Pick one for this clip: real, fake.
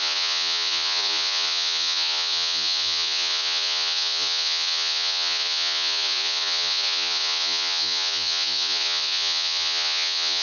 fake